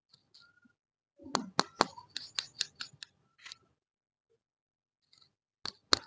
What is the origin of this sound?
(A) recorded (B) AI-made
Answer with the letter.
A